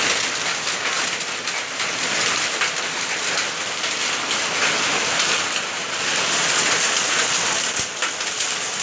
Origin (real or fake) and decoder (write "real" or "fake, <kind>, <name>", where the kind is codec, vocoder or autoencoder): real